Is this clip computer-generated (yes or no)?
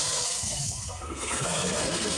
yes